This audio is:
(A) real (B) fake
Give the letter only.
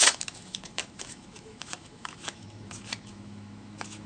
B